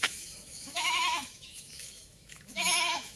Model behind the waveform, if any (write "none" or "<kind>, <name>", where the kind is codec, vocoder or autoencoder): autoencoder, DAC-VAE